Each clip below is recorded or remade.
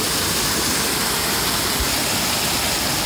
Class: recorded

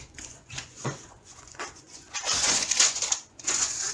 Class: remade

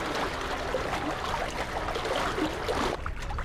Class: recorded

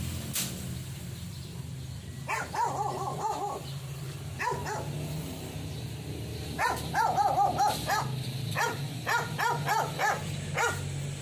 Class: recorded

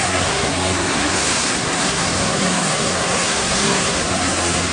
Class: remade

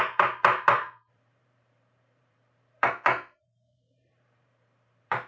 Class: remade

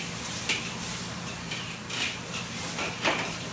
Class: recorded